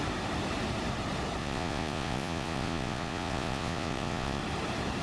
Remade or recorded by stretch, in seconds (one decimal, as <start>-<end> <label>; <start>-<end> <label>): 0.0-1.4 recorded; 1.4-4.4 remade; 4.4-5.0 recorded